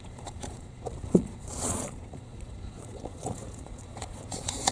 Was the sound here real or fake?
fake